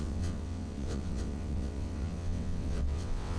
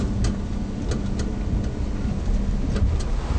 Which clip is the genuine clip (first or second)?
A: second